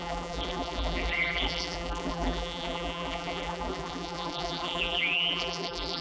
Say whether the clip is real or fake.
fake